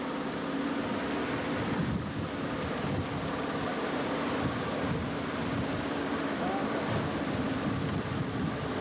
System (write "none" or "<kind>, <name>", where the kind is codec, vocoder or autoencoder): none